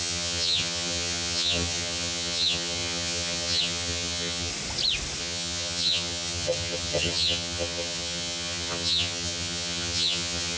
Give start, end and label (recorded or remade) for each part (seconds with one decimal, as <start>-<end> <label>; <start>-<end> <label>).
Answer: 0.0-4.5 remade; 4.5-5.2 recorded; 5.2-10.6 remade